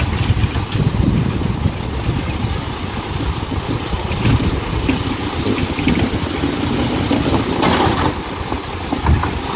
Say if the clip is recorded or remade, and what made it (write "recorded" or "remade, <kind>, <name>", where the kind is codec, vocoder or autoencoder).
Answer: recorded